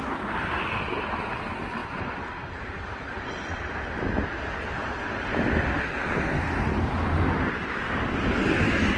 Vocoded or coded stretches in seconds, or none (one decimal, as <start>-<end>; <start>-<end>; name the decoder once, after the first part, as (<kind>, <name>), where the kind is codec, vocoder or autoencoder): none